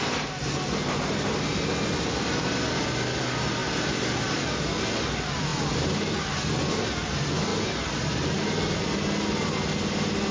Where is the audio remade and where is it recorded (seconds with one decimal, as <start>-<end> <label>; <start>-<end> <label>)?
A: 0.0-7.5 recorded; 7.5-8.0 remade; 8.0-10.3 recorded